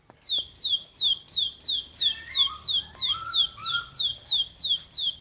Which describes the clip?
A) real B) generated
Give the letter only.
A